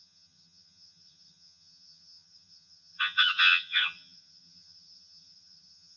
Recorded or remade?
remade